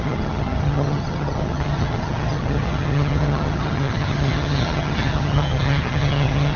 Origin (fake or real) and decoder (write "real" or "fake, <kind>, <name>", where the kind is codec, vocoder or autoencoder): fake, vocoder, HiFi-GAN